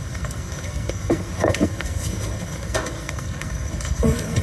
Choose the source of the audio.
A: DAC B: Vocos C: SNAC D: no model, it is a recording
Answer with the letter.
C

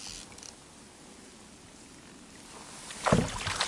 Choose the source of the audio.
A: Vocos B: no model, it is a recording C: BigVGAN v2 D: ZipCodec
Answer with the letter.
B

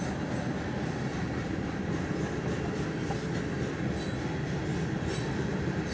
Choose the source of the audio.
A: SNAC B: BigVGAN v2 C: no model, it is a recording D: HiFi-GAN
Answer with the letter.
C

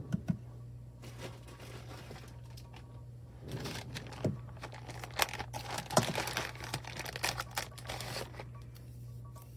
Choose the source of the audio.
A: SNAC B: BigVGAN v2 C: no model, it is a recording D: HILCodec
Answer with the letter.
C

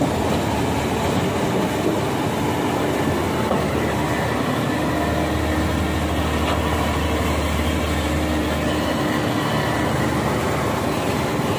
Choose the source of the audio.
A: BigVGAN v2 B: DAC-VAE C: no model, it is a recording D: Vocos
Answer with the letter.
C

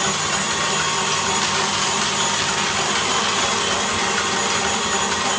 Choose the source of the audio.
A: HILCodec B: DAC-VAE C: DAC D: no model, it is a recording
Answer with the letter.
D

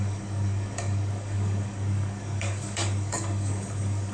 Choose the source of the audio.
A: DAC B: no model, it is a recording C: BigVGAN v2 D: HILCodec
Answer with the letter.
A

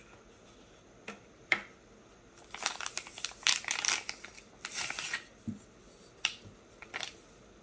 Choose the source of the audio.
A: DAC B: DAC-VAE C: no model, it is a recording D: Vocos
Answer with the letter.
C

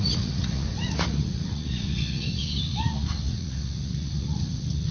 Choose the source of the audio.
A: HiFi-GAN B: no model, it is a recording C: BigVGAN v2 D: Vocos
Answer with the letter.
D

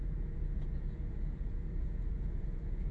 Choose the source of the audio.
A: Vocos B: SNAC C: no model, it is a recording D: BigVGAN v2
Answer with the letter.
A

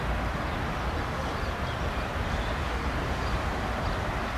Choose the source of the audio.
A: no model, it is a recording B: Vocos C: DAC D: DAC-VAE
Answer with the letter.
A